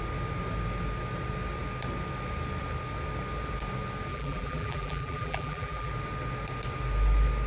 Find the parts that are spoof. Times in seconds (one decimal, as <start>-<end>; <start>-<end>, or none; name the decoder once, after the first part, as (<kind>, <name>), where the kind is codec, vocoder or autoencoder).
4.1-5.9 (vocoder, BigVGAN v2)